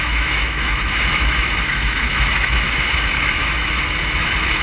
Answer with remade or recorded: remade